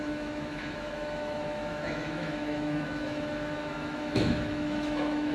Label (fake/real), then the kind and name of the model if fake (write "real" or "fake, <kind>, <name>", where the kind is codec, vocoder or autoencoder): fake, autoencoder, DAC-VAE